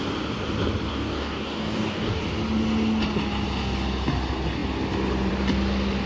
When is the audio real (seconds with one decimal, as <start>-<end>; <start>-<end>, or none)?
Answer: 0.0-0.9; 2.2-6.1